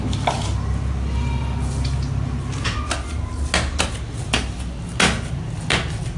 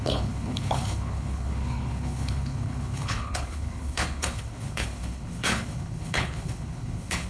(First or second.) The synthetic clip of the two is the second